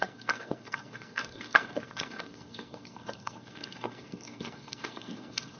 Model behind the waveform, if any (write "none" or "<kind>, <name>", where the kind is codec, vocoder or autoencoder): codec, SNAC